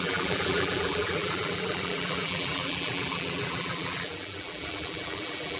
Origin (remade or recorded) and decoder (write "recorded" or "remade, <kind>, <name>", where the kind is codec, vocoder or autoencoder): remade, vocoder, BigVGAN v2